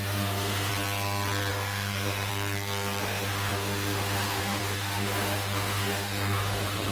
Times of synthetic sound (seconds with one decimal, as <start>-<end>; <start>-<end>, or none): 0.0-0.7; 1.5-2.3; 3.0-6.9